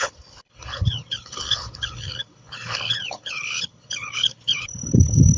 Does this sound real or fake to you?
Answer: fake